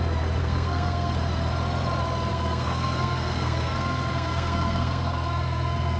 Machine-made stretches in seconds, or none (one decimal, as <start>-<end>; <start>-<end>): 0.4-1.1; 2.3-6.0